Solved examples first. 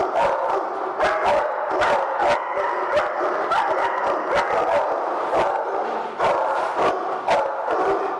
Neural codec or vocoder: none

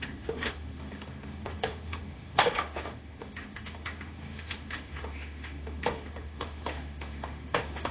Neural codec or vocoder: autoencoder, DAC-VAE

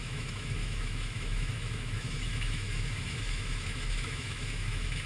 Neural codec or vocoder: autoencoder, DAC-VAE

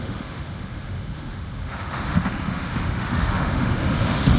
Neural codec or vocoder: autoencoder, DAC-VAE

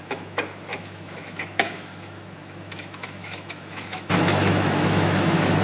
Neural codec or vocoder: autoencoder, DAC-VAE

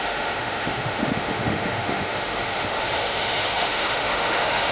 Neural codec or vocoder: autoencoder, DAC-VAE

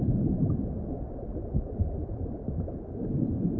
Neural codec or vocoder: none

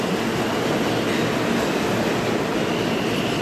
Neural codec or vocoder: none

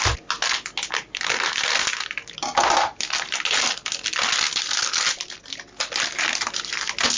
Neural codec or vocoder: none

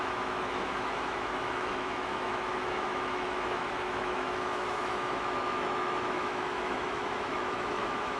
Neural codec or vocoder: autoencoder, DAC-VAE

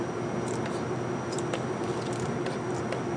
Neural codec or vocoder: none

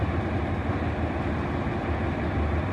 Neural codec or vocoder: none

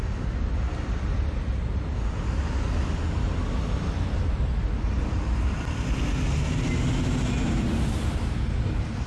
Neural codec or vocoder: none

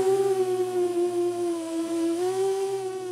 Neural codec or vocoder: autoencoder, DAC-VAE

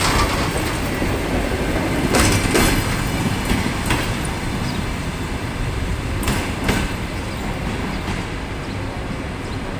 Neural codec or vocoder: none